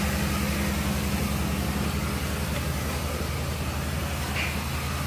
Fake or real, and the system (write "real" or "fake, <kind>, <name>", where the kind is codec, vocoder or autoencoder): real